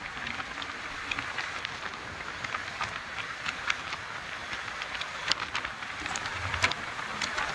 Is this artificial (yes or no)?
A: yes